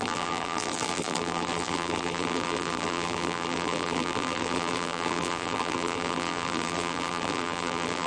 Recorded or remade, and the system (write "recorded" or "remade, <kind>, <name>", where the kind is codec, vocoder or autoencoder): remade, vocoder, BigVGAN v2